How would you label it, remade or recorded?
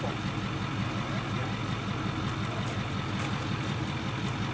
recorded